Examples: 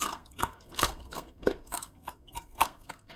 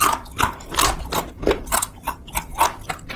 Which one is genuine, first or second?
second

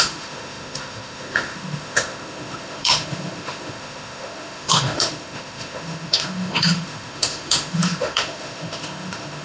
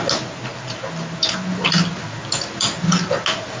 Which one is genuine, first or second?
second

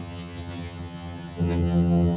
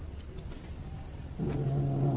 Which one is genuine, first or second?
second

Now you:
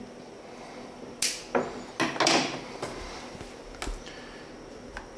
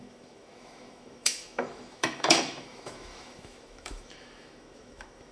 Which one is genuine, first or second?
first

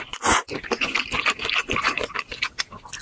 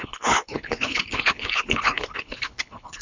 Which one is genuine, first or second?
first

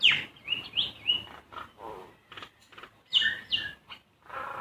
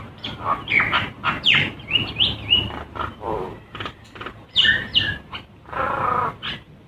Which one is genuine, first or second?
first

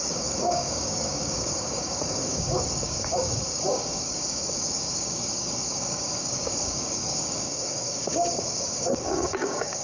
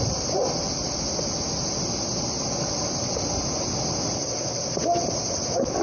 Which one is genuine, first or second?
second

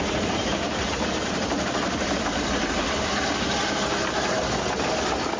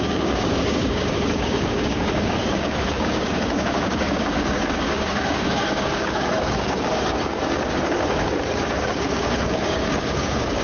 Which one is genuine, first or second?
first